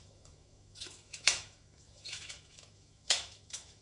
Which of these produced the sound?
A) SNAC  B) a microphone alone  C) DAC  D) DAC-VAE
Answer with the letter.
D